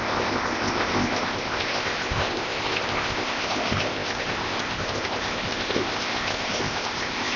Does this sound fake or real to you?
fake